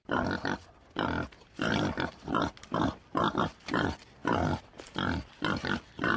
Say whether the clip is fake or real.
real